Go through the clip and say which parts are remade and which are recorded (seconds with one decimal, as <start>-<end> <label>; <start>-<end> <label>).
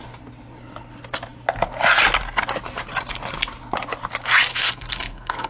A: 0.0-4.5 recorded; 4.5-5.5 remade